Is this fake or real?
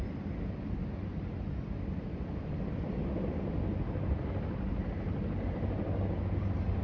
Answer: real